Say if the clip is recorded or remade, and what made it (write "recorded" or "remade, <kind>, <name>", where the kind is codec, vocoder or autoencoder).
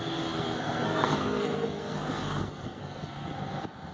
remade, codec, SNAC